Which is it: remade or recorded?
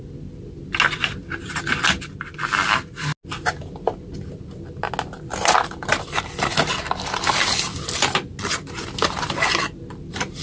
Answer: recorded